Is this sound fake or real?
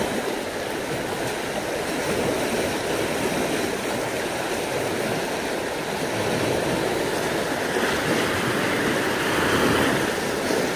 real